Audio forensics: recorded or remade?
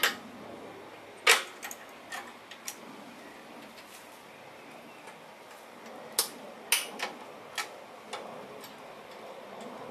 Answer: recorded